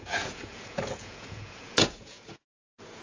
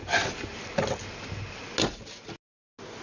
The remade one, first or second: first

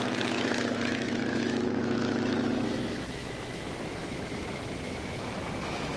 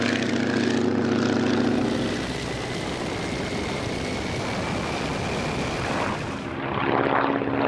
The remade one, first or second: first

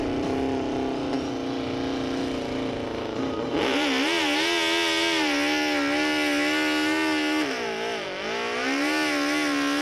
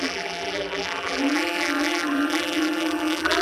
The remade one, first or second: second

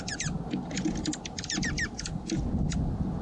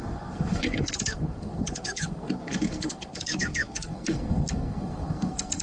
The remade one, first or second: second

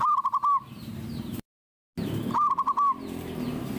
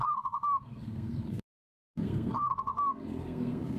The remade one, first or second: second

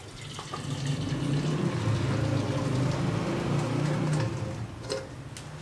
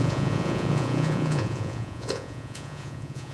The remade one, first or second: second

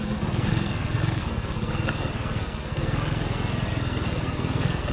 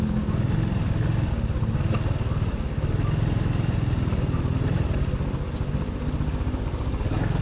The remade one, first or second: first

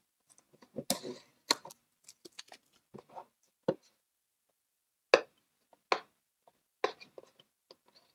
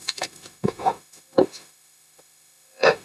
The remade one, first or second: second